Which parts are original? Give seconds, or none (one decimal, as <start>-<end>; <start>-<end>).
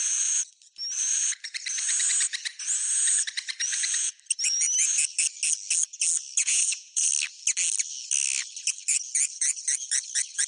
0.0-6.4; 7.1-10.5